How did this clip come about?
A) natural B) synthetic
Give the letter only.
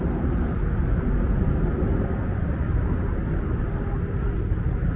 A